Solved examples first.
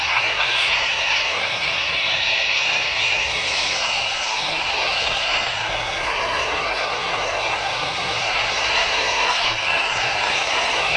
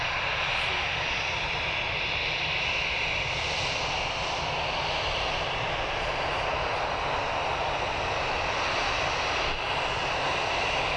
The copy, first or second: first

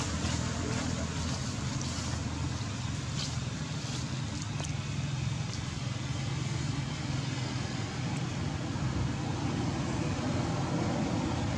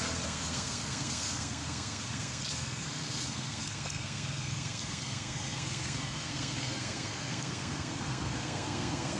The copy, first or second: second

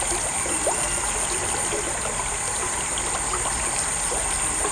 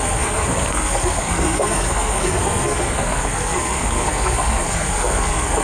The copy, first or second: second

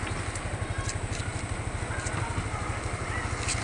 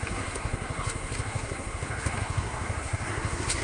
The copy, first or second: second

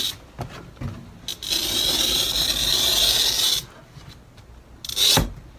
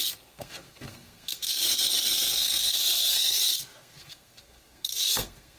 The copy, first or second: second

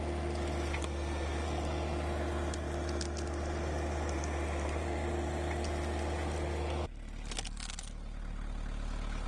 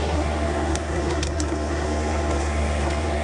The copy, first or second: second